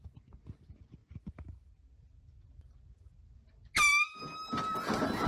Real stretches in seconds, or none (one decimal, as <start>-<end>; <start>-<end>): 0.0-5.3